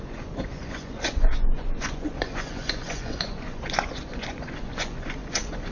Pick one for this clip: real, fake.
fake